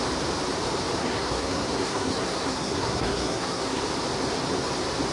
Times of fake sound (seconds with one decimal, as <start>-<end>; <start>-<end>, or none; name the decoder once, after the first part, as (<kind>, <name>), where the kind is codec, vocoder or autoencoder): 1.0-3.8 (codec, SNAC)